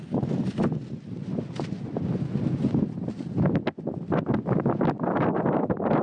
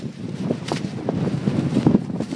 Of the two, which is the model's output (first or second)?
second